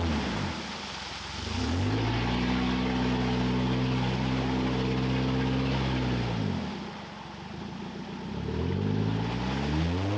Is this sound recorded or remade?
recorded